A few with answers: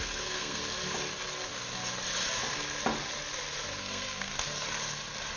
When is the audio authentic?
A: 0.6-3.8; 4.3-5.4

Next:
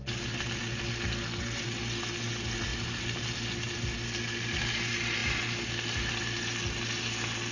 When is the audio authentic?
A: 0.0-2.7; 3.2-7.5

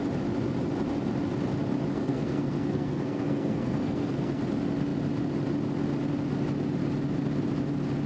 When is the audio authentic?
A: 0.0-1.9; 4.4-8.1

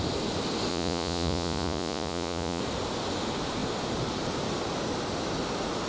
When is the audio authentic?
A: 0.0-0.7; 2.6-5.9

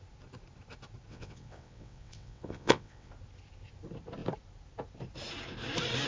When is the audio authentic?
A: 0.0-1.1; 3.1-6.1